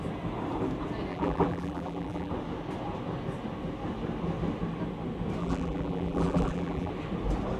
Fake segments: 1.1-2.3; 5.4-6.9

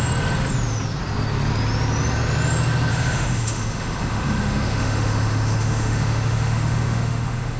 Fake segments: 2.9-7.6

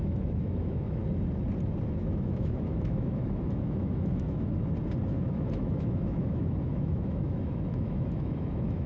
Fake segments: 0.0-1.0; 1.9-4.6; 5.1-8.9

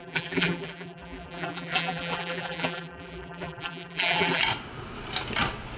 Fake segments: 0.0-4.4

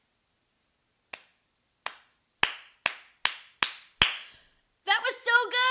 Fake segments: none